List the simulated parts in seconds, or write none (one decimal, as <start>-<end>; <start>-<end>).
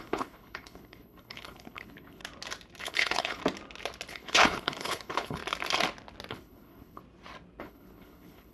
0.0-2.2; 2.8-3.4; 4.1-5.4; 6.3-7.0; 7.6-8.5